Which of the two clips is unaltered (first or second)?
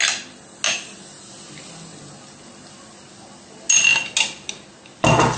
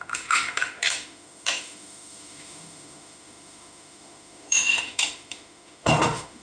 first